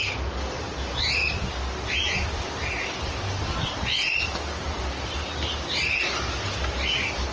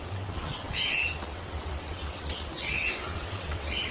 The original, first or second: first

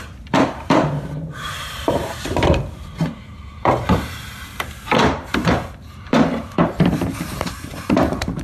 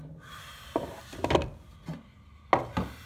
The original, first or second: second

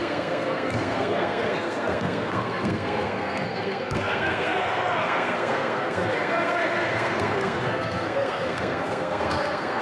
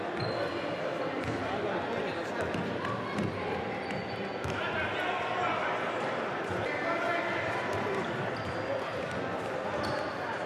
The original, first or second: second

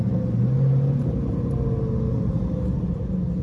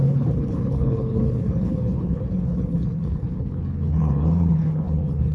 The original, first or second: first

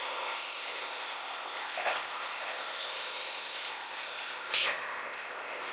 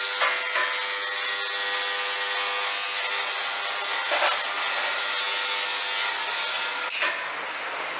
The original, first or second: second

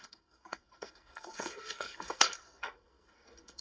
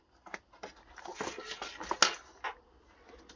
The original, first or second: second